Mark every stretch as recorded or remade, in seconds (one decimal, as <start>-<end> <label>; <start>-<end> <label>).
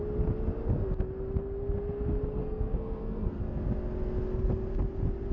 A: 0.0-2.4 recorded; 2.4-3.4 remade; 3.4-5.3 recorded